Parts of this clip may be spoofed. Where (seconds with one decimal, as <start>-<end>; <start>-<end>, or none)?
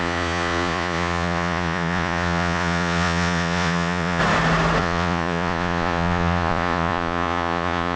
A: 0.0-4.2; 4.8-8.0